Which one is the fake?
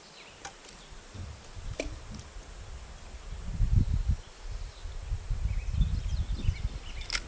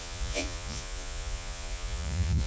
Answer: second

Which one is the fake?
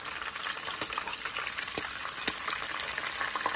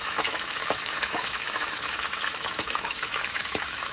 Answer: second